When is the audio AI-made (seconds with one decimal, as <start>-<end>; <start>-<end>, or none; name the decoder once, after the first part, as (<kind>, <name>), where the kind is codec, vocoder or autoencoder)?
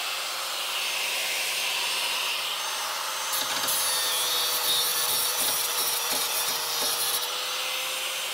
4.9-5.8 (vocoder, BigVGAN v2)